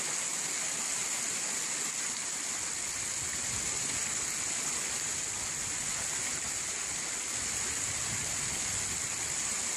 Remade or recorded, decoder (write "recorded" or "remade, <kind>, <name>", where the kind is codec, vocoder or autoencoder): recorded